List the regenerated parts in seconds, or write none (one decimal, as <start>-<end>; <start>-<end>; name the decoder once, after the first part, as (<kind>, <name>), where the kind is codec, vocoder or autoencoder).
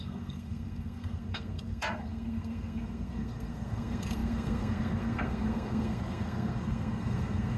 0.0-7.6 (codec, SNAC)